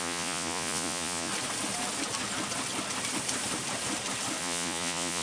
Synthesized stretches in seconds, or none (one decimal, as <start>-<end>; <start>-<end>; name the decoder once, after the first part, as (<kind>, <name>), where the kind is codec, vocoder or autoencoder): 0.0-1.3 (vocoder, Vocos); 4.4-5.2